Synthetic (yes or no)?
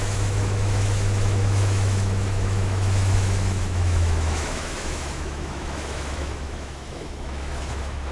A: yes